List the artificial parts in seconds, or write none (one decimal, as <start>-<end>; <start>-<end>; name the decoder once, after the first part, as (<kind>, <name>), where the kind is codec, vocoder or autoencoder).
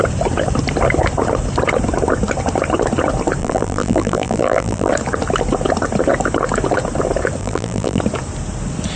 3.4-4.9 (vocoder, BigVGAN v2); 7.4-8.0